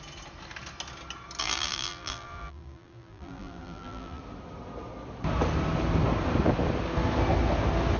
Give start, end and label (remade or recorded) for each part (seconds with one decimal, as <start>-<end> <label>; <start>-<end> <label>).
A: 0.0-1.4 recorded; 1.4-4.2 remade; 4.2-8.0 recorded